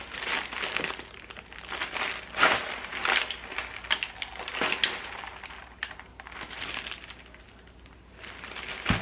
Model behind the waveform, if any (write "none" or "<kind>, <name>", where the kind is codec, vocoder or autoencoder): none